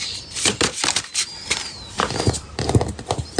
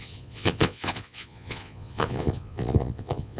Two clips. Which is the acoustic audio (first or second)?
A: first